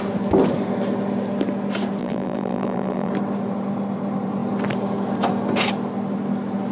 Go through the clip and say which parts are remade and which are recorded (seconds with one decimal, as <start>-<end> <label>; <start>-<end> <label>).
0.0-2.0 recorded; 2.0-3.1 remade; 3.1-6.7 recorded

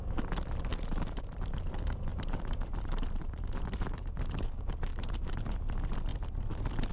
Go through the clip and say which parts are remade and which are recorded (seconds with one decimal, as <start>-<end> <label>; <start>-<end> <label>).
0.0-0.7 recorded; 0.7-1.7 remade; 1.7-2.1 recorded; 2.1-4.2 remade; 4.2-4.9 recorded; 4.9-5.4 remade; 5.4-6.9 recorded